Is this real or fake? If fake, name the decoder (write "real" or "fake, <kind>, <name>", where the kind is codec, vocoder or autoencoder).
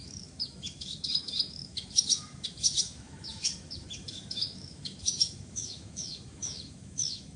fake, autoencoder, DAC-VAE